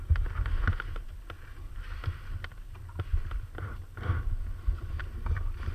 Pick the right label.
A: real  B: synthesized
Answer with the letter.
A